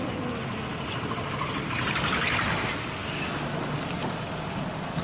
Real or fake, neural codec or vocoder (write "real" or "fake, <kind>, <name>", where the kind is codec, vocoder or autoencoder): real